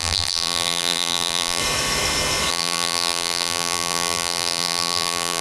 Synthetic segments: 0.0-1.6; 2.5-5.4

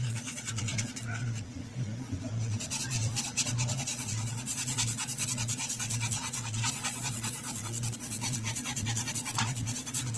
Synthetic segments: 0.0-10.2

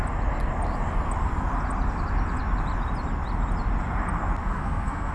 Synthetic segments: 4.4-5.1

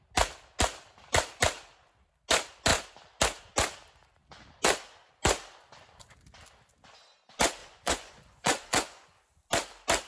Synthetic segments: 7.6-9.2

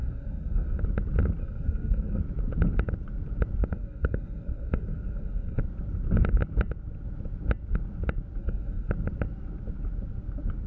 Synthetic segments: 0.0-0.8; 1.4-2.2; 3.6-5.6; 8.4-8.9